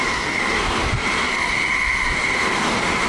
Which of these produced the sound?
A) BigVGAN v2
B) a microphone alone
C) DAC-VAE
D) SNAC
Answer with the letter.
B